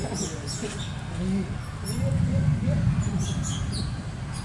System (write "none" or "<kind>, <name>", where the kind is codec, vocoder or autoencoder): none